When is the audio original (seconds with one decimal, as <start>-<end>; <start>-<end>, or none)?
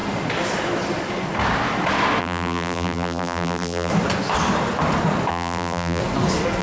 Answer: 0.0-2.2; 3.9-5.3; 6.0-6.6